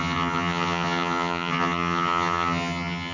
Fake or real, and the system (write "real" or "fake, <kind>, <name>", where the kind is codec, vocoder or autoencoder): fake, vocoder, HiFi-GAN